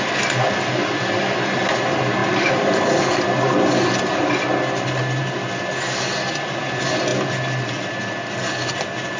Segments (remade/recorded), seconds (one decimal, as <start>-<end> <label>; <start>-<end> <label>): 0.0-2.2 recorded; 2.2-3.7 remade; 3.7-9.2 recorded